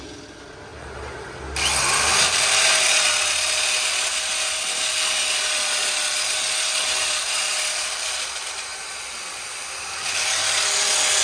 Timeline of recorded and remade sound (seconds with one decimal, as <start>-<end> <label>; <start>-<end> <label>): 0.0-11.2 recorded